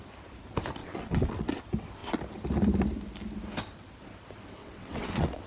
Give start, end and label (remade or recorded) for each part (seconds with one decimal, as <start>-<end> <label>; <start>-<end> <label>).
0.0-0.8 recorded; 0.8-1.6 remade; 1.6-4.6 recorded; 4.6-5.5 remade